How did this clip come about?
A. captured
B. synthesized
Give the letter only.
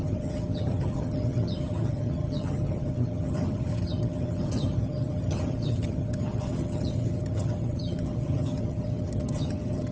B